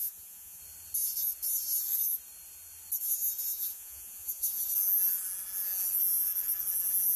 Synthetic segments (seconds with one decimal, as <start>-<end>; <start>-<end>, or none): 0.0-0.6; 3.5-4.6